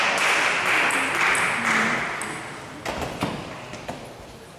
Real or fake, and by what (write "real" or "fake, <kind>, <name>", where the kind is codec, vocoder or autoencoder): real